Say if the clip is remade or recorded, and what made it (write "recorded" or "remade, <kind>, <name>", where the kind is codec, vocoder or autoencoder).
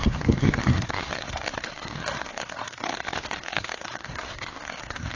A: remade, codec, SNAC